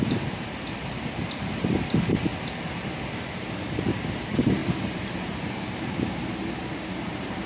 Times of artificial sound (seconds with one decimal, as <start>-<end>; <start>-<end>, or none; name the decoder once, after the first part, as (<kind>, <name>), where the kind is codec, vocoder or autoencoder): 0.0-2.3 (vocoder, BigVGAN v2); 3.2-7.5

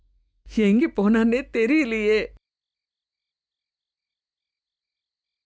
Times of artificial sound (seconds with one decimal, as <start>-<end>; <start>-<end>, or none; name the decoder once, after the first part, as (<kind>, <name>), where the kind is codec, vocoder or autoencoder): 0.0-0.8 (autoencoder, DAC-VAE)

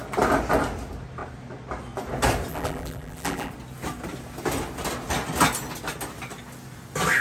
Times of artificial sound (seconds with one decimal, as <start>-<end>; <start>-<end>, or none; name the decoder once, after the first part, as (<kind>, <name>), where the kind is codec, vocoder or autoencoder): 2.5-3.5 (vocoder, BigVGAN v2)

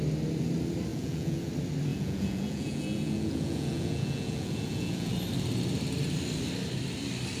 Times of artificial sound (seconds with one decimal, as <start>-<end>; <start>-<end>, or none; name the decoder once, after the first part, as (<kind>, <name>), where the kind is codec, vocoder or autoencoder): 0.9-1.5 (vocoder, Vocos); 1.9-5.1